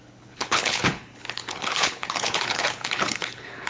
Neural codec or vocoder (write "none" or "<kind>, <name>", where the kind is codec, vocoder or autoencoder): codec, HILCodec